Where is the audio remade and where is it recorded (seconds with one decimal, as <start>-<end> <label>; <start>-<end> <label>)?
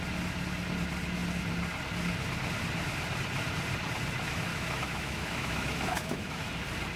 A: 0.0-4.5 recorded; 4.5-6.5 remade; 6.5-7.0 recorded